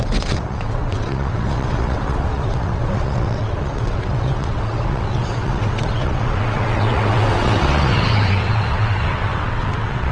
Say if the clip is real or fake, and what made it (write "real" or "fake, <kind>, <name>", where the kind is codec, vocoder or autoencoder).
fake, vocoder, WaveNeXt